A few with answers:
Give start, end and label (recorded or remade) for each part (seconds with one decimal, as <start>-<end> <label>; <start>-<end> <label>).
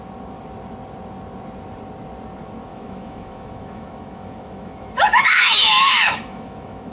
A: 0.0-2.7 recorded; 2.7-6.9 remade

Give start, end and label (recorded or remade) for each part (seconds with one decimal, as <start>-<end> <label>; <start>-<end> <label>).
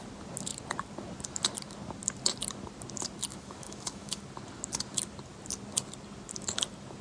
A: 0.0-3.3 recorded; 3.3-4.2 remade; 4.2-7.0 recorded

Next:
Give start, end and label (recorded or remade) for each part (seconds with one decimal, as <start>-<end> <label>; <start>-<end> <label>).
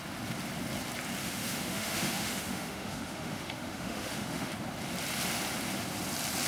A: 0.0-1.2 recorded; 1.2-4.5 remade; 4.5-6.5 recorded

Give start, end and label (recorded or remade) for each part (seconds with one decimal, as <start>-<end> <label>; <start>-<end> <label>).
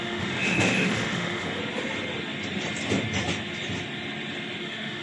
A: 0.0-1.6 remade; 1.6-4.6 recorded; 4.6-5.0 remade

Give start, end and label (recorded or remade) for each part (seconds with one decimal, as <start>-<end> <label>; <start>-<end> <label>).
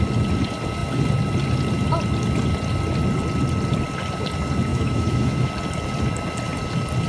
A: 0.0-4.7 recorded; 4.7-5.5 remade; 5.5-7.1 recorded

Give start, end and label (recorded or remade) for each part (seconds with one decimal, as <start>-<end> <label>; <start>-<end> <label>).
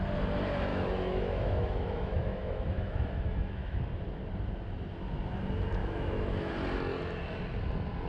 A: 0.0-0.7 recorded; 0.7-3.8 remade; 3.8-5.8 recorded; 5.8-6.5 remade; 6.5-8.1 recorded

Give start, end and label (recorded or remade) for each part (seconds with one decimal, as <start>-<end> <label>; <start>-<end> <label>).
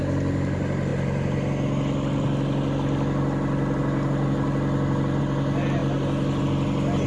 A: 0.0-7.1 recorded